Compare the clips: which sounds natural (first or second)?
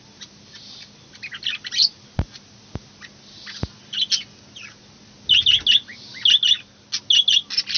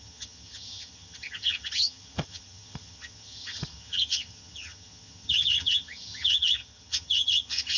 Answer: first